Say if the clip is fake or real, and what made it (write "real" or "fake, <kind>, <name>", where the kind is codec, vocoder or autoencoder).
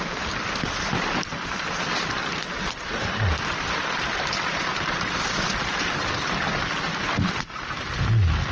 real